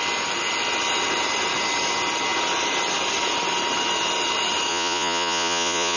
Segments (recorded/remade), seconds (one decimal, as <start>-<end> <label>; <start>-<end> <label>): 0.0-4.7 recorded; 4.7-6.0 remade